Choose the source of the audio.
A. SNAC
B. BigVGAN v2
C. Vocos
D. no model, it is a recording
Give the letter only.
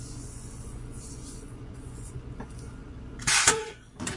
C